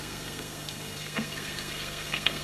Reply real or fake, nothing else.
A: fake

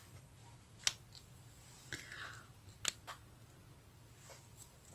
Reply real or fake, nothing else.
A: real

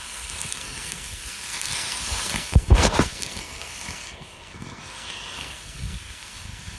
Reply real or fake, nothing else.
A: fake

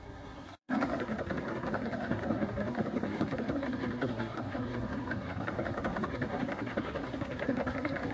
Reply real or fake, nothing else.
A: fake